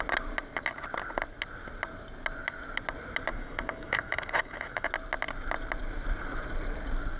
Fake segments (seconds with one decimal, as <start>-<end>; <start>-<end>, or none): 3.3-4.9